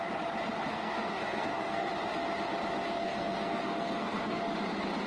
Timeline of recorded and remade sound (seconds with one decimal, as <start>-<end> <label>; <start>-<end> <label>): 0.0-0.7 recorded; 0.7-1.9 remade; 1.9-3.0 recorded; 3.0-4.4 remade; 4.4-5.1 recorded